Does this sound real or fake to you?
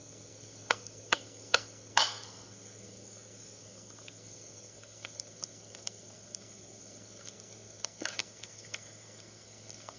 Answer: fake